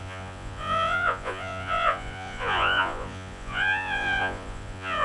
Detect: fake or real fake